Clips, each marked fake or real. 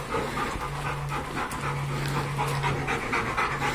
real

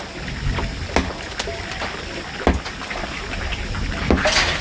real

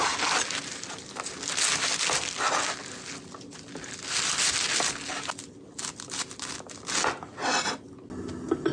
real